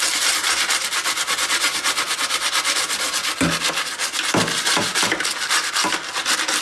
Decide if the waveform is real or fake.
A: real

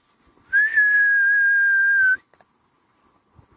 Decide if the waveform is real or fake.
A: real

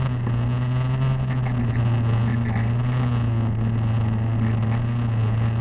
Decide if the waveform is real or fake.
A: real